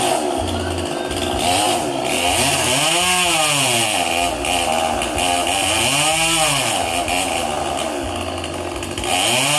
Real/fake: real